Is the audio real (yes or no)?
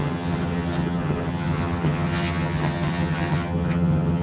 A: no